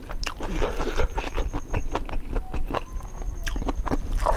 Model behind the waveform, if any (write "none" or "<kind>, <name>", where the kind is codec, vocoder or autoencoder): none